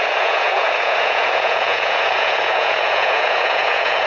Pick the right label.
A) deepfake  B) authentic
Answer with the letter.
A